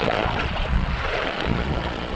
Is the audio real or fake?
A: fake